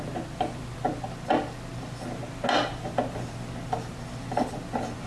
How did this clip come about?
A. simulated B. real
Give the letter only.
B